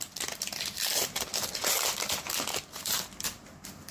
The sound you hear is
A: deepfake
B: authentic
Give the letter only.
B